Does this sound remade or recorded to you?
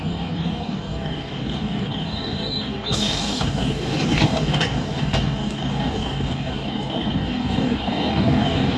remade